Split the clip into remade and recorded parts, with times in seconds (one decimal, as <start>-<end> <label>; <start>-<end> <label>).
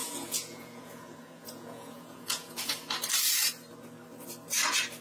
0.0-2.7 remade; 2.7-5.0 recorded